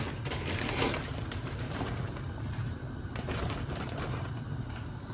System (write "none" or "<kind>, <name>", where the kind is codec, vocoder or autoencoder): vocoder, BigVGAN v2